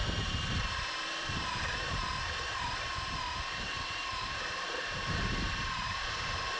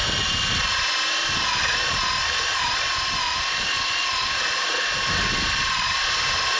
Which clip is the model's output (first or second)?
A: first